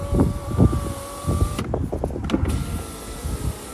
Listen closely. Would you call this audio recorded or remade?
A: recorded